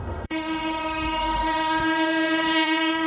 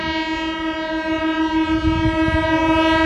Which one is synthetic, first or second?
first